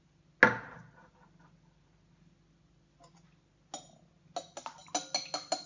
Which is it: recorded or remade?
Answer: recorded